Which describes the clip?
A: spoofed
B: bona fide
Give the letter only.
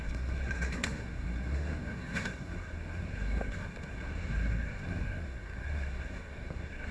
A